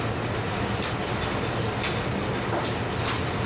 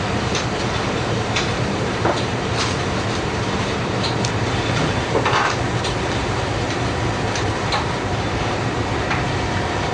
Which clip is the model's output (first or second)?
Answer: second